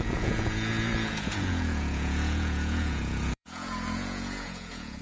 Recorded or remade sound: remade